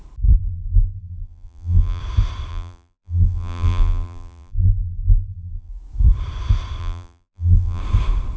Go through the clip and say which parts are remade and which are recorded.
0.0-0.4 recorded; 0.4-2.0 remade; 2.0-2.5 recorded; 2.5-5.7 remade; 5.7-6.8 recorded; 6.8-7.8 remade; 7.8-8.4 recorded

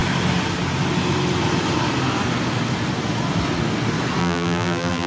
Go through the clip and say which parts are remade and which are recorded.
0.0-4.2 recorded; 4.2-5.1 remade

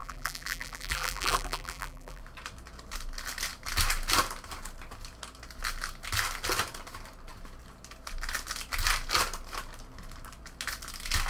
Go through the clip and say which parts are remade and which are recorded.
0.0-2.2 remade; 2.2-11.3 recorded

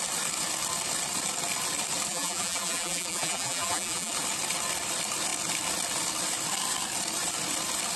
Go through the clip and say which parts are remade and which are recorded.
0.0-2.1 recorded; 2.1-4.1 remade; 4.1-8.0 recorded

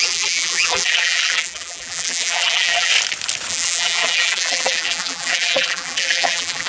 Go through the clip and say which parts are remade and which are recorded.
0.0-2.9 remade; 2.9-3.5 recorded; 3.5-6.7 remade

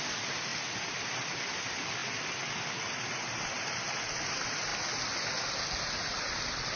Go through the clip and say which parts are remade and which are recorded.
0.0-0.5 recorded; 0.5-1.3 remade; 1.3-6.8 recorded